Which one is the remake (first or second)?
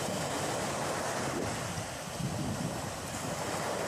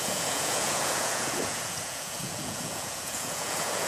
second